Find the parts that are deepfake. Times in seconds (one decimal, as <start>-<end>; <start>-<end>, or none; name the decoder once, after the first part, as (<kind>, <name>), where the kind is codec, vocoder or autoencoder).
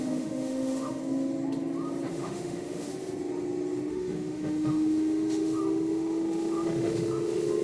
0.0-1.0 (autoencoder, DAC-VAE); 2.1-2.9; 3.9-7.6